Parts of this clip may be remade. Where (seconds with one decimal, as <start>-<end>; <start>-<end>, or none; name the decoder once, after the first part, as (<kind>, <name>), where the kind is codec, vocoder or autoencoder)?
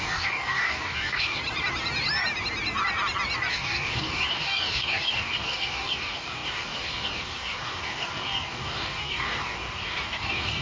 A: 0.0-1.4 (codec, DAC); 3.5-10.6